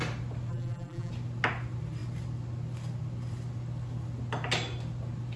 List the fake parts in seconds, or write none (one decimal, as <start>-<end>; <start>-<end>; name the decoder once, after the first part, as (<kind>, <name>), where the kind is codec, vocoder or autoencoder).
0.5-1.1 (vocoder, BigVGAN v2)